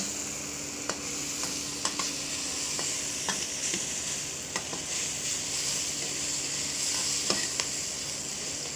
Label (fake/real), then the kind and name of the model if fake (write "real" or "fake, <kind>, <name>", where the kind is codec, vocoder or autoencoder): real